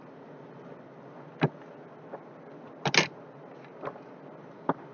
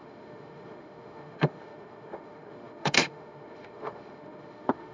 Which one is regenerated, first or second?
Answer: second